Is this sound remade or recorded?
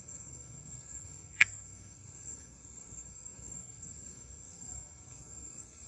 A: remade